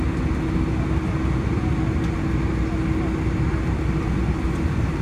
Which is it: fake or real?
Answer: real